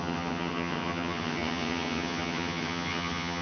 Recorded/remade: remade